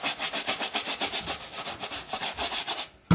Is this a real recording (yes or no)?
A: yes